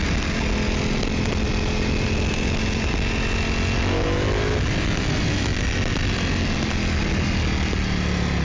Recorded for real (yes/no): yes